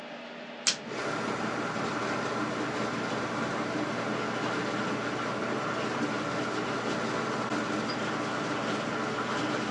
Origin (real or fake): real